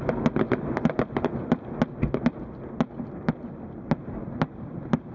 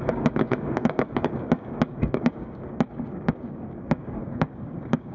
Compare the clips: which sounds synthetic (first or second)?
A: second